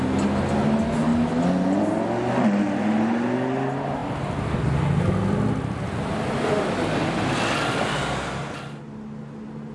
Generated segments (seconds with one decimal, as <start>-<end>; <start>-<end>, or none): none